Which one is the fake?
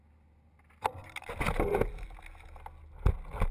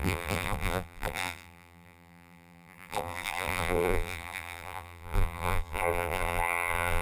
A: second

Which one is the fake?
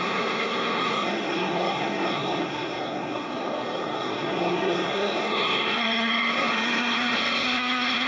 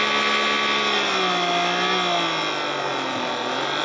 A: first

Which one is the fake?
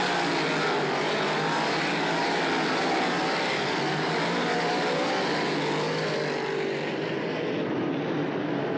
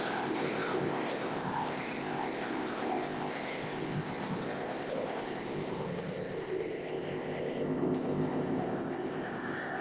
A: second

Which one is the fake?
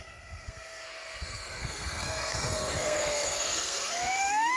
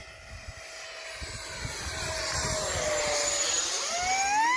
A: first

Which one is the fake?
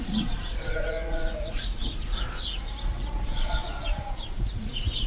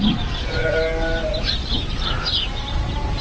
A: first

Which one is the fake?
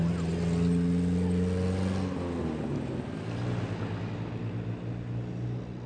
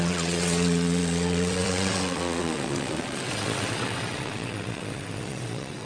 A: second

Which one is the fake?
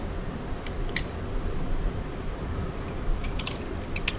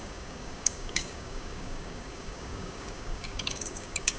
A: second